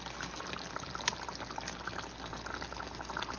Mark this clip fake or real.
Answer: real